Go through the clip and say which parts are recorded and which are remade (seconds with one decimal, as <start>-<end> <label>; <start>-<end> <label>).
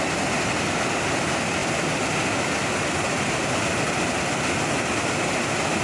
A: 0.0-5.8 recorded